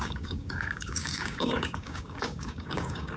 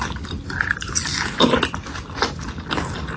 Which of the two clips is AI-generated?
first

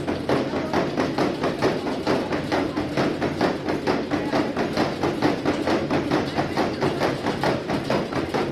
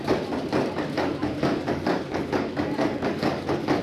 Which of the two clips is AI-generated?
second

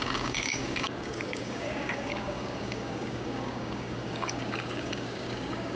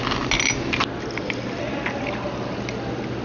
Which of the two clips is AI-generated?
first